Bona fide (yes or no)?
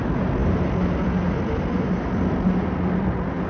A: yes